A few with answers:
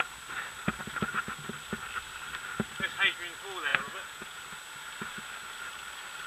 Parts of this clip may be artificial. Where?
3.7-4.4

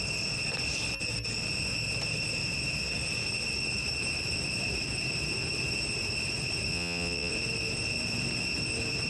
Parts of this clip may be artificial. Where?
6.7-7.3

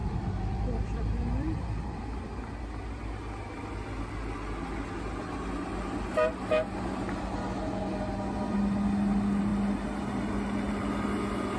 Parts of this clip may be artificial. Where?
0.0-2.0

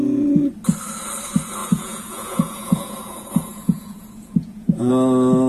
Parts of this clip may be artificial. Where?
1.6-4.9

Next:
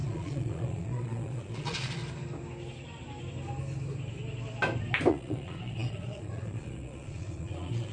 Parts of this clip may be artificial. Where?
0.0-2.0; 5.1-7.9

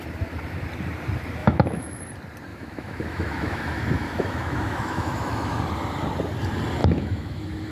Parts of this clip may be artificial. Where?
1.4-2.0; 2.5-5.6; 6.8-7.7

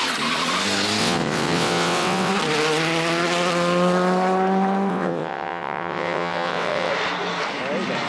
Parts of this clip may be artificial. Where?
1.0-2.3; 4.9-6.9

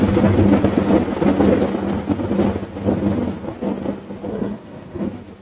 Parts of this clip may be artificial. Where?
4.3-5.0